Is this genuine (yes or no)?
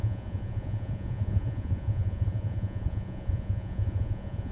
no